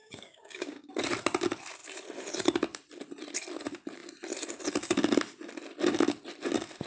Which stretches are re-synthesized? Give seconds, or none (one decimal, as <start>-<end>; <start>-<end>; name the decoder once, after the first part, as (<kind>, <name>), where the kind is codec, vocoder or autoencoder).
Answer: 0.0-0.9 (codec, DAC)